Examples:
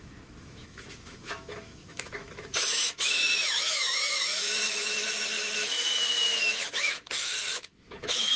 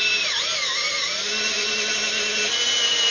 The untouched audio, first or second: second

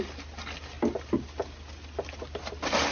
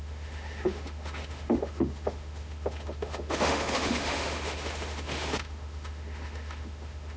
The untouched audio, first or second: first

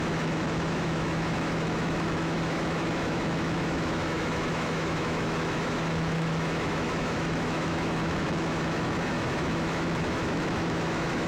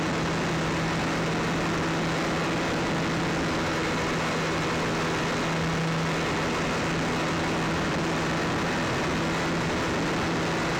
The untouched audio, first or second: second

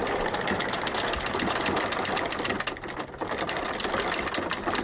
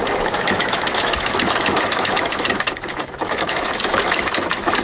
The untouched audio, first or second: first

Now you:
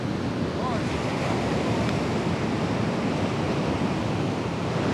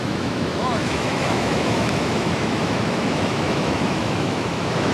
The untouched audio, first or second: first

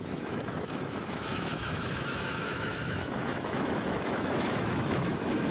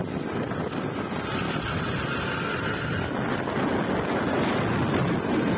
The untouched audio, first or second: second